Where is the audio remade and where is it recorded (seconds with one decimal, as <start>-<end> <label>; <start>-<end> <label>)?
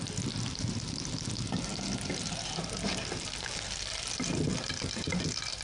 0.0-5.6 recorded